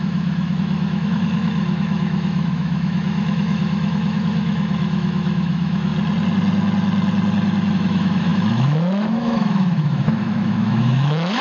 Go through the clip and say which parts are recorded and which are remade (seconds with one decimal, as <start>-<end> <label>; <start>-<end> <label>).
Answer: 0.0-5.9 remade; 5.9-7.7 recorded; 7.7-11.4 remade